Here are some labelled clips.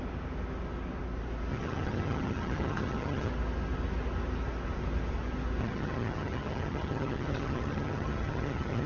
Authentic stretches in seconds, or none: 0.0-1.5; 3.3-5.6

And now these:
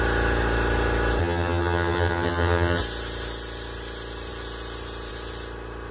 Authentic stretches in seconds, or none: 0.0-1.2; 2.8-5.9

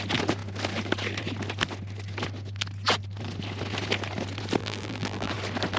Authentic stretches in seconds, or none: 0.0-4.6; 5.3-5.8

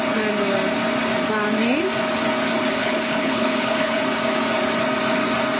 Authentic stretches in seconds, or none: 0.0-2.8; 4.0-5.6

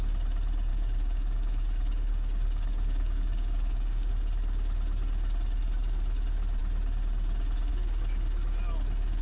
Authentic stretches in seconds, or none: 0.0-0.7; 4.1-9.2

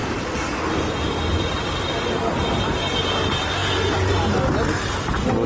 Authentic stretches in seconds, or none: 0.6-1.3; 1.9-5.5